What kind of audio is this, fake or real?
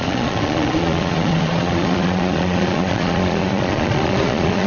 fake